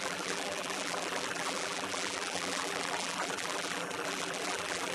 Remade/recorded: remade